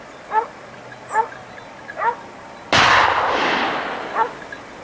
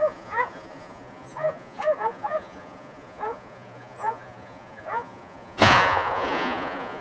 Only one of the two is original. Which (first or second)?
first